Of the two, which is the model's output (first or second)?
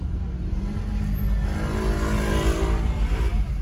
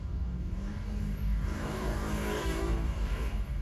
second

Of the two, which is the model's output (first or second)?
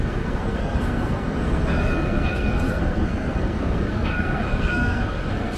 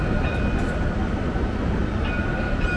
first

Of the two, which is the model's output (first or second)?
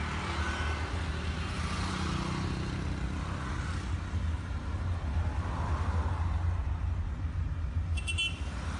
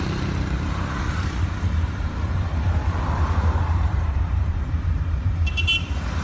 second